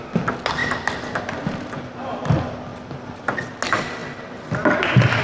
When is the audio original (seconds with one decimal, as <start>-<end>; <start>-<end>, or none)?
0.0-5.2